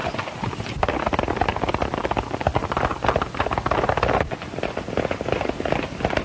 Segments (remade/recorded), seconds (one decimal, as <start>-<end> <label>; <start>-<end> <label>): 0.0-6.2 recorded